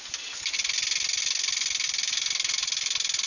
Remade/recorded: recorded